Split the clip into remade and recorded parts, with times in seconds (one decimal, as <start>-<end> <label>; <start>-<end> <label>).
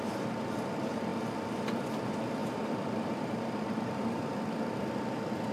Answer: 0.0-2.4 recorded; 2.4-4.4 remade; 4.4-5.5 recorded